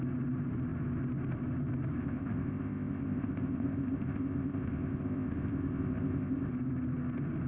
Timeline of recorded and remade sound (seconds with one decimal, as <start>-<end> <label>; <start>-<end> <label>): 0.0-2.0 recorded; 2.0-6.5 remade; 6.5-7.5 recorded